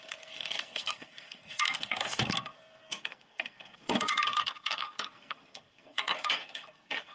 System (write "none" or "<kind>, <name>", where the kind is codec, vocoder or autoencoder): codec, SNAC